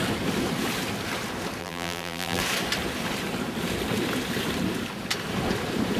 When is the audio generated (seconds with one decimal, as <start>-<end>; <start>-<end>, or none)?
1.6-2.4